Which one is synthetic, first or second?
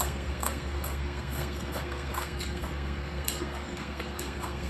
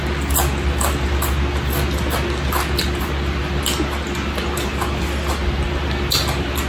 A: first